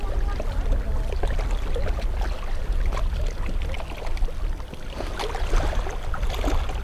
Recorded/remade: recorded